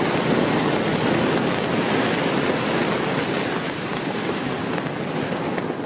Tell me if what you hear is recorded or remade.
recorded